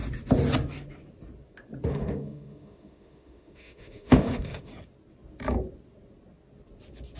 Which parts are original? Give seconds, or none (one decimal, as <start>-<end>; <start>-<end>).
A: 0.0-1.9; 4.7-7.2